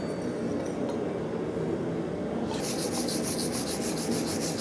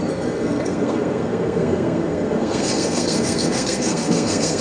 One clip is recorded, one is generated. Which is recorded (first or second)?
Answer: first